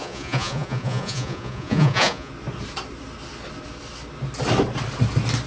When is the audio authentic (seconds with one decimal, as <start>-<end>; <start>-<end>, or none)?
2.3-5.5